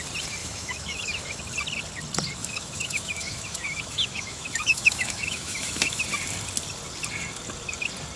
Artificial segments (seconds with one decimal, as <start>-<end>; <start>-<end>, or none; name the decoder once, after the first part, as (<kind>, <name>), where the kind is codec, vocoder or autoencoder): 0.4-1.4 (autoencoder, DAC-VAE); 2.4-6.0